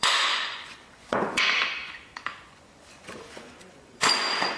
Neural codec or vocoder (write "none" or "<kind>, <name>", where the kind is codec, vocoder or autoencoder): vocoder, Vocos